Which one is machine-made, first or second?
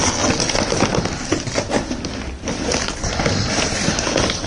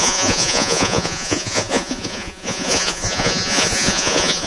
second